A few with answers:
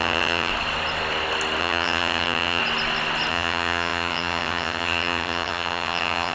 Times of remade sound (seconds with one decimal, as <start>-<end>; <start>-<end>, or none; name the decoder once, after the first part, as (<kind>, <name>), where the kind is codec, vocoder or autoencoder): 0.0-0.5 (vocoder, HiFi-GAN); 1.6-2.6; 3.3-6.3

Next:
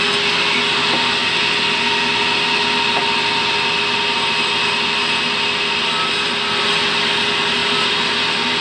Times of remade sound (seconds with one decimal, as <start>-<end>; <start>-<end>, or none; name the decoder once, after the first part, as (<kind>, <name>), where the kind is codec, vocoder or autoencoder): none

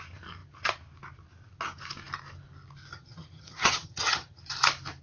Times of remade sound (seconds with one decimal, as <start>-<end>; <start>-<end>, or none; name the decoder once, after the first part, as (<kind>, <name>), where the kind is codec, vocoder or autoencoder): 2.9-4.4 (vocoder, HiFi-GAN)

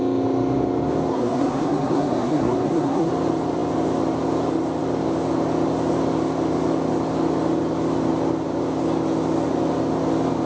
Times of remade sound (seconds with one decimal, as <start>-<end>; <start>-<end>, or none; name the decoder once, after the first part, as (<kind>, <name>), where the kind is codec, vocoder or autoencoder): 1.1-3.1 (codec, SNAC)

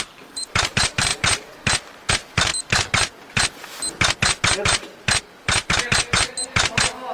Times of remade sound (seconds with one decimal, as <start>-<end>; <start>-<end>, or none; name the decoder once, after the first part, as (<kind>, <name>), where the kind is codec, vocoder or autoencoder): 0.0-2.5 (vocoder, BigVGAN v2); 5.4-5.9

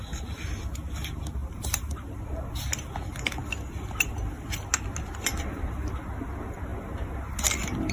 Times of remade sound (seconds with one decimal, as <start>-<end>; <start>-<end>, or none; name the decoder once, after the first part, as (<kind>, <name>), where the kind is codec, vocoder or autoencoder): 1.4-2.2 (vocoder, BigVGAN v2)